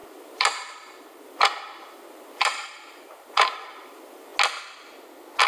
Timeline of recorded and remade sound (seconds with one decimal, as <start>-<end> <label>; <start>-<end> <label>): 0.0-4.3 remade; 4.3-5.5 recorded